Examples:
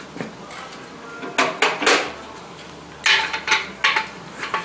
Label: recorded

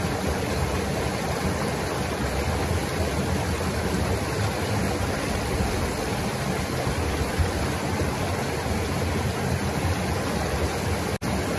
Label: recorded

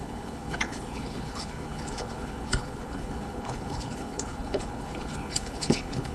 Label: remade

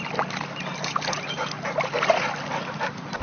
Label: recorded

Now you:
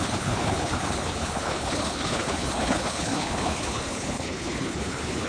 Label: remade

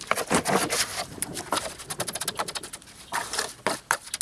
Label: recorded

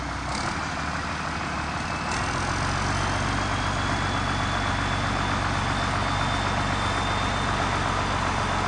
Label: recorded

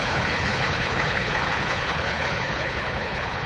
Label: remade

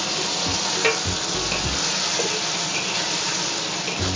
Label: recorded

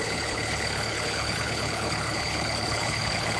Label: remade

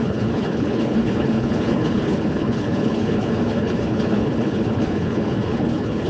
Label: remade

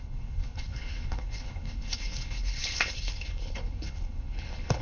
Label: remade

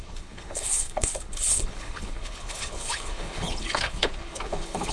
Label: remade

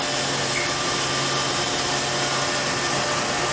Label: recorded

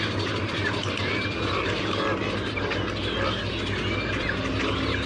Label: recorded